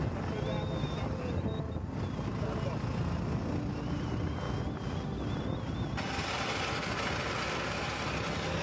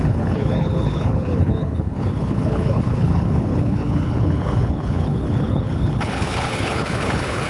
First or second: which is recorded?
first